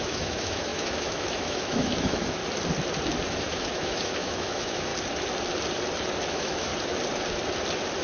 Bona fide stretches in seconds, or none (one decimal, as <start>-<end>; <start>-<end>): 2.4-3.4; 4.9-6.3; 6.7-8.0